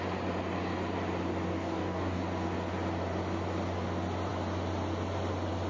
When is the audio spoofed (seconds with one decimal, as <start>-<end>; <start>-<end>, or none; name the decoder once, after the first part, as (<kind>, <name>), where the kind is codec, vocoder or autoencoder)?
1.5-2.2 (codec, DAC)